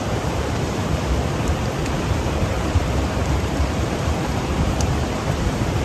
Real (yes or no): no